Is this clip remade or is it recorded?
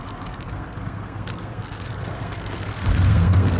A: remade